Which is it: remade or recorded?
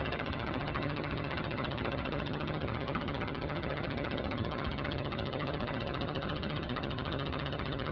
remade